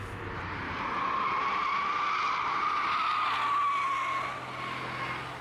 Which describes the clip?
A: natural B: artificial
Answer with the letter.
A